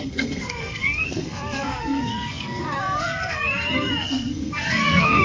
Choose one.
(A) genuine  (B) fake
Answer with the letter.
B